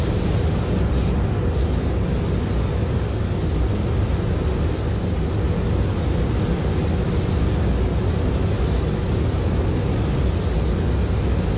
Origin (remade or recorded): recorded